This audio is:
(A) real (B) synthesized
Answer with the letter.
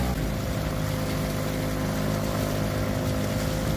A